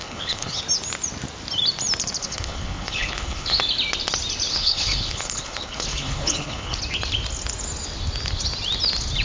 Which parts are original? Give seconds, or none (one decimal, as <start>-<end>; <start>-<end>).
0.6-2.2; 3.6-4.5; 6.8-9.2